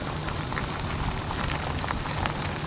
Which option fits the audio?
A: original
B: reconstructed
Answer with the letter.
A